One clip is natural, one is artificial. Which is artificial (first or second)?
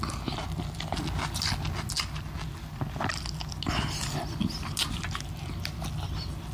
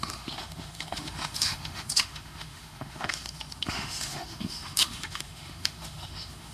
second